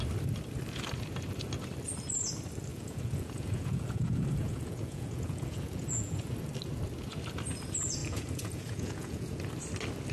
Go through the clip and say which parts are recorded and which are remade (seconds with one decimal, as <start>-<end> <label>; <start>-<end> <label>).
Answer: 0.0-2.7 recorded; 2.7-6.3 remade; 6.3-8.0 recorded; 8.0-9.4 remade; 9.4-10.1 recorded